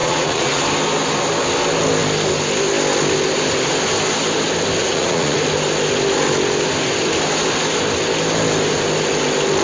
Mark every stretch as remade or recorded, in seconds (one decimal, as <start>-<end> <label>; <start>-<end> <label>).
0.0-0.6 remade; 0.6-4.8 recorded; 4.8-5.4 remade; 5.4-9.6 recorded

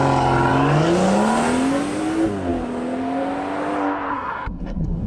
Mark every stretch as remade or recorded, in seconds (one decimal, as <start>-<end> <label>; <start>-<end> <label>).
0.0-4.1 recorded; 4.1-5.1 remade

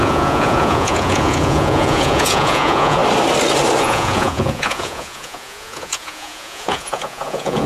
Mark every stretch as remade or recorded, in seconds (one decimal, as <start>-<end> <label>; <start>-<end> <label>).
0.0-3.0 remade; 3.0-3.8 recorded; 3.8-7.7 remade

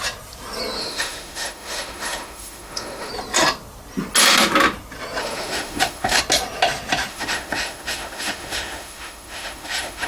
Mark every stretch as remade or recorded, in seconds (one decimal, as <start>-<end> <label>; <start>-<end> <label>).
0.0-0.8 recorded; 0.8-3.1 remade; 3.1-5.2 recorded; 5.2-6.2 remade; 6.2-7.1 recorded; 7.1-10.1 remade

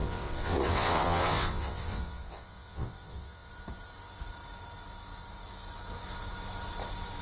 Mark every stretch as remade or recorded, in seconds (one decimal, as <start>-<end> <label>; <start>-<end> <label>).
0.0-3.5 remade; 3.5-7.2 recorded